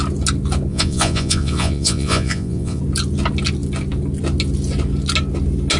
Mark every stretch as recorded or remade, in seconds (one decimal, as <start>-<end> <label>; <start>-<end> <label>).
0.0-0.7 recorded; 0.7-2.8 remade; 2.8-5.8 recorded